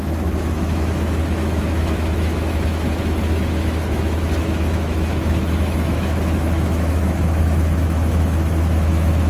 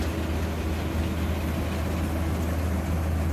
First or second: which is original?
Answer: second